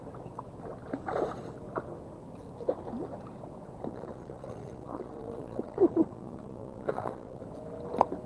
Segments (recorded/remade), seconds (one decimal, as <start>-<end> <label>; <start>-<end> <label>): 0.0-3.9 recorded; 3.9-7.4 remade; 7.4-8.3 recorded